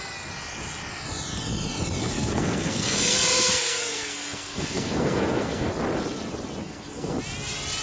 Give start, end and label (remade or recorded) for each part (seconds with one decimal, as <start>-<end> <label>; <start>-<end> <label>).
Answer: 0.0-2.0 recorded; 2.0-5.7 remade; 5.7-6.6 recorded; 6.6-7.2 remade; 7.2-7.8 recorded